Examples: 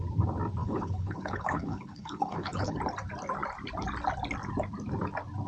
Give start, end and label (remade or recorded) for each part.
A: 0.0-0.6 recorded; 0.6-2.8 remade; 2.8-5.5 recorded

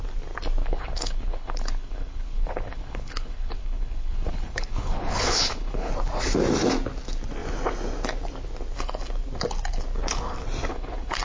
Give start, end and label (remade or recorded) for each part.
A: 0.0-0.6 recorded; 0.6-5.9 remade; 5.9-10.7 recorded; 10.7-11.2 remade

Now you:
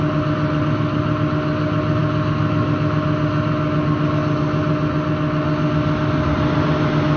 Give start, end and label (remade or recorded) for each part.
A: 0.0-7.2 recorded